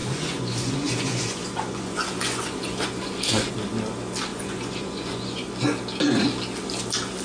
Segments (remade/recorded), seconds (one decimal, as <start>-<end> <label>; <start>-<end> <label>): 0.0-3.5 remade; 3.5-4.3 recorded; 4.3-5.5 remade; 5.5-7.2 recorded